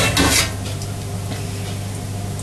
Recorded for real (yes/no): yes